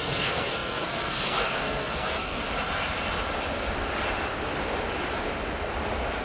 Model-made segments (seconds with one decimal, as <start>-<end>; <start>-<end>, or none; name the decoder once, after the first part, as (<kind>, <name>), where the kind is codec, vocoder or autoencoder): 0.0-2.4 (codec, SNAC)